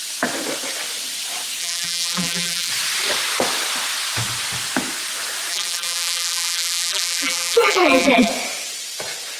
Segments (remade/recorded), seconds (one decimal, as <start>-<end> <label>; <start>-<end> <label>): 0.0-1.6 recorded; 1.6-2.7 remade; 2.7-5.5 recorded; 5.5-8.3 remade; 8.3-9.4 recorded